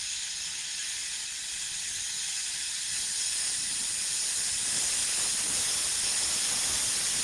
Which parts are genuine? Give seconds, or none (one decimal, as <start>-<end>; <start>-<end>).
0.0-7.2